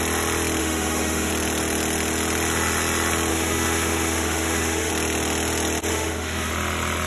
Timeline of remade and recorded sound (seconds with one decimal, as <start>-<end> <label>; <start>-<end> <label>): 0.0-0.6 recorded; 0.6-1.3 remade; 1.3-3.3 recorded; 3.3-4.9 remade; 4.9-5.9 recorded; 5.9-6.5 remade; 6.5-7.1 recorded